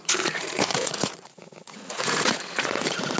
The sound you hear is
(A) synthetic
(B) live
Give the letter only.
A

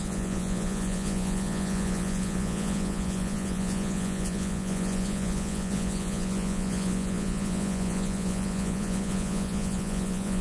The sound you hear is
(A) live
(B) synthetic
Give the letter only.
B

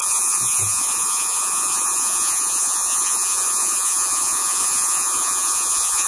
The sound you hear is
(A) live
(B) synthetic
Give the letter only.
B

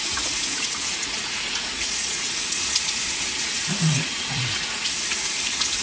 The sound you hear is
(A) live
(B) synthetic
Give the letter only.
B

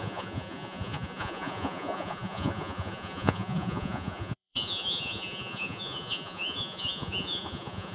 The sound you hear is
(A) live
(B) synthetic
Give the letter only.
B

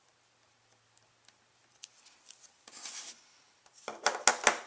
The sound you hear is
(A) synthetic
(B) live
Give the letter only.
B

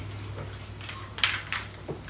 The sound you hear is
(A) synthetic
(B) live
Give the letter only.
B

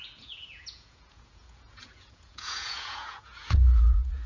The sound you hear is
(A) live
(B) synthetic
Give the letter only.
B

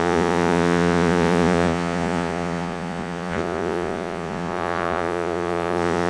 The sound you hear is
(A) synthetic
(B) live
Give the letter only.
A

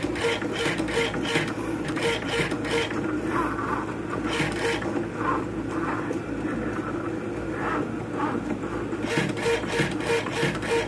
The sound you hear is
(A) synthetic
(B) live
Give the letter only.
B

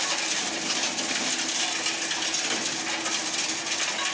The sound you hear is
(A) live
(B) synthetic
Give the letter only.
A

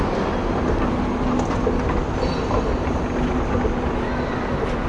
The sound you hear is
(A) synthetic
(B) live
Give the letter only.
B